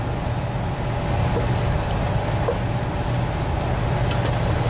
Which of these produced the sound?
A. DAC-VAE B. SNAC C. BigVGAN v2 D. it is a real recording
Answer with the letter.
D